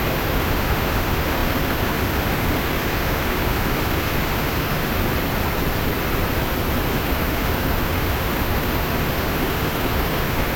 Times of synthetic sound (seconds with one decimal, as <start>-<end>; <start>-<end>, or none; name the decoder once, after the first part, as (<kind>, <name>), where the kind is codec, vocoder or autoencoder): 0.0-5.0 (autoencoder, DAC-VAE); 6.9-10.6